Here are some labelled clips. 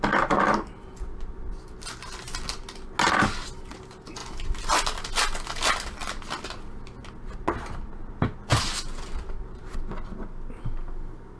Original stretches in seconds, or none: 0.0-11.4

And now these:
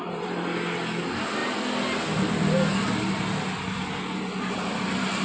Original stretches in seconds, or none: 0.0-5.2